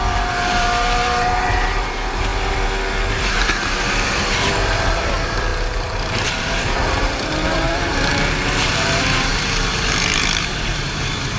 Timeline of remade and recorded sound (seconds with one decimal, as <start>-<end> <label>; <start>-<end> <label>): 0.0-2.3 remade; 2.3-3.1 recorded; 3.1-5.5 remade; 5.5-6.4 recorded; 6.4-8.1 remade; 8.1-8.7 recorded; 8.7-11.4 remade